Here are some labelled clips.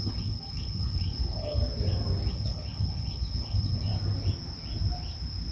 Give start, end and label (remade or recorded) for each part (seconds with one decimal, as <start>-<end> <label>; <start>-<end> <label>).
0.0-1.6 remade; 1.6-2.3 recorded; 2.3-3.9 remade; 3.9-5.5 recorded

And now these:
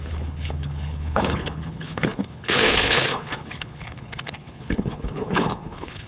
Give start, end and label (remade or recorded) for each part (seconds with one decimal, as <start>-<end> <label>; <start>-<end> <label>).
0.0-6.1 remade

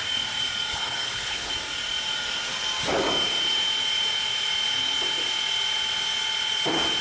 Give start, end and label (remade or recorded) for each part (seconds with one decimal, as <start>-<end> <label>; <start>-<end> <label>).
0.0-0.7 recorded; 0.7-1.5 remade; 1.5-7.0 recorded